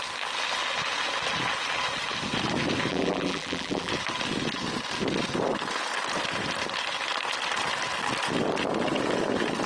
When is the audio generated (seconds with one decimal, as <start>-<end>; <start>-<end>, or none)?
2.9-3.9